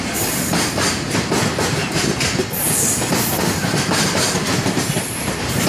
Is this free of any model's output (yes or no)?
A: no